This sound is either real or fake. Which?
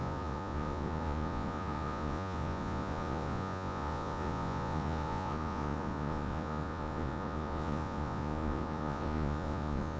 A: fake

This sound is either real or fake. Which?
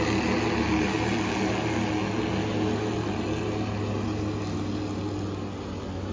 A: real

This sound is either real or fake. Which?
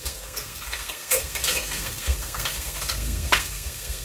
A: fake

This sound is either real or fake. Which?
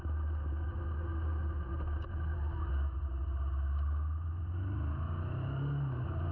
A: real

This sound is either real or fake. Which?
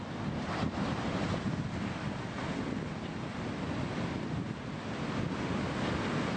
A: real